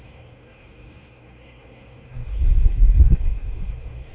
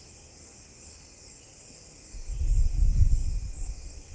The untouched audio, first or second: second